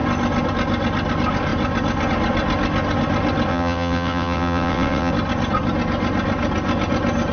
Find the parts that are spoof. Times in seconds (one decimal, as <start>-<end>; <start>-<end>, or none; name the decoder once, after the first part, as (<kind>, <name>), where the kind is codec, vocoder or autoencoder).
3.5-5.1 (vocoder, WaveNeXt)